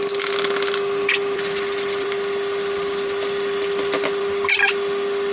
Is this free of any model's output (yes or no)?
yes